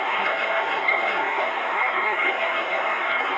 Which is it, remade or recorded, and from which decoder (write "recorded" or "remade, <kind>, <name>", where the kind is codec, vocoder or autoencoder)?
remade, codec, SNAC